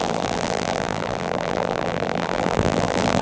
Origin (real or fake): fake